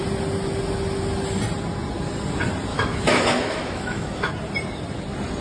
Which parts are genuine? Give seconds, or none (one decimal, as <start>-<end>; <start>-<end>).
0.0-2.7; 4.3-5.4